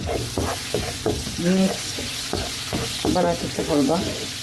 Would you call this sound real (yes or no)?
no